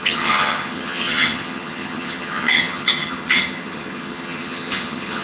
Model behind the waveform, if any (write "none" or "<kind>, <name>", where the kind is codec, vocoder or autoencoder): vocoder, HiFi-GAN